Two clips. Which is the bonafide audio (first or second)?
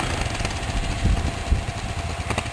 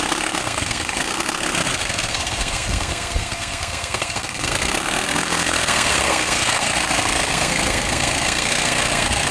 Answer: first